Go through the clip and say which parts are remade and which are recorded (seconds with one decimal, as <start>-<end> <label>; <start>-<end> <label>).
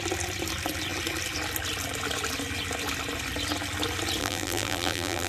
0.0-4.2 recorded; 4.2-5.3 remade